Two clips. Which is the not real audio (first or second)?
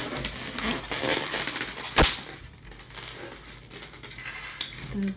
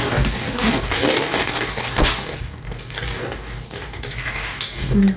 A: second